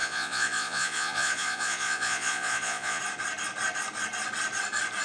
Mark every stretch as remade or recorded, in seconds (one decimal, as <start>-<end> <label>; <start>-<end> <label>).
0.0-3.0 remade; 3.0-5.0 recorded